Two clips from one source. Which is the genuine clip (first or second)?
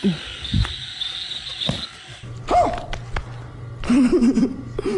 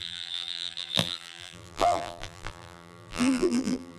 first